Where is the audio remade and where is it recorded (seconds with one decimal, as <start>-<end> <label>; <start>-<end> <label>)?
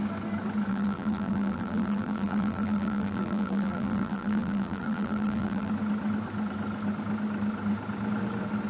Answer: 0.0-0.7 recorded; 0.7-5.7 remade; 5.7-8.7 recorded